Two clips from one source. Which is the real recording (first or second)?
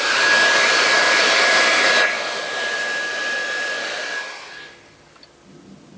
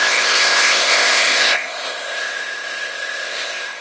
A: first